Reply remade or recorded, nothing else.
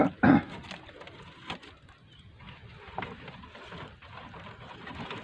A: recorded